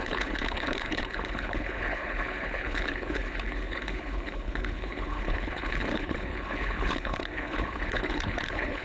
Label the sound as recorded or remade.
remade